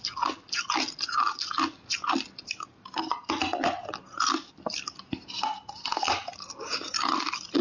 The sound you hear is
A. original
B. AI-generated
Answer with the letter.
A